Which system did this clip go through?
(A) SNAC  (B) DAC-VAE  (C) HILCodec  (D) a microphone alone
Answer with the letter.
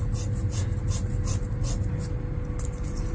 D